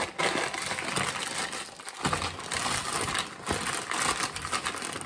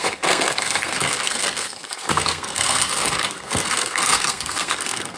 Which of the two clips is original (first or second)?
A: first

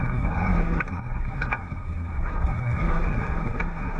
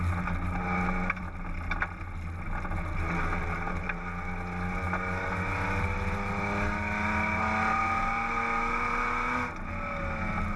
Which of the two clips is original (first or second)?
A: second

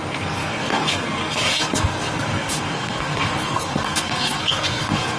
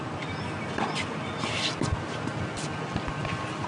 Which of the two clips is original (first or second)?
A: second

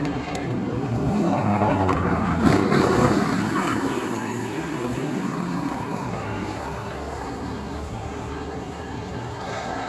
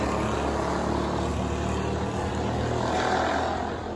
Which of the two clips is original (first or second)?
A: second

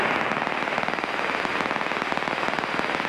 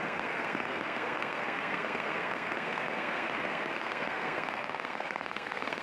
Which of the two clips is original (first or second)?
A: first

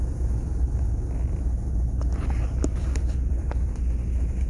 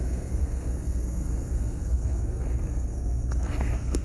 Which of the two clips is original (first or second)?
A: first